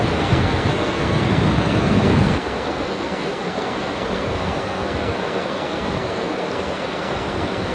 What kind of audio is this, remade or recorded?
remade